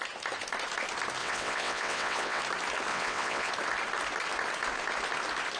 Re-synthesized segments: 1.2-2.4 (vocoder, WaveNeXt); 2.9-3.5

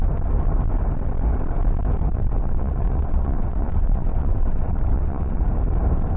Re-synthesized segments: 2.1-5.4 (vocoder, WaveNeXt)

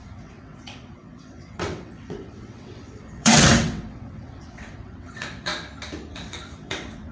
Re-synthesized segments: 0.0-5.5 (vocoder, WaveNeXt); 6.1-7.1